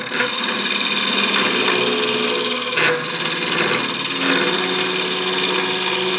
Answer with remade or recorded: recorded